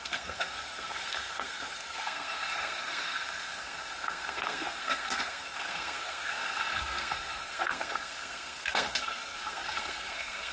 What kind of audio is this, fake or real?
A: fake